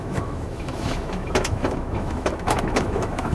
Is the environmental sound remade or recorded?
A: remade